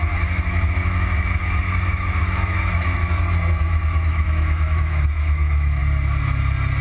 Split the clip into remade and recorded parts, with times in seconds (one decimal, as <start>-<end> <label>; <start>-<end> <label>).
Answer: 0.0-3.0 remade; 3.0-3.5 recorded; 3.5-5.8 remade; 5.8-6.8 recorded